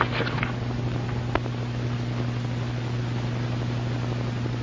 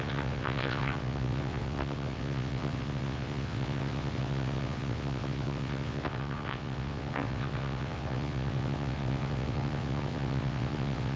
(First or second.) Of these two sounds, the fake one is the second